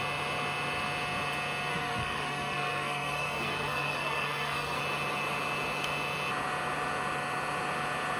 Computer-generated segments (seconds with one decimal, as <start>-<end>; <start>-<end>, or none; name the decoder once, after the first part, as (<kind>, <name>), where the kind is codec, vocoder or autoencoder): 1.7-4.8 (codec, SNAC)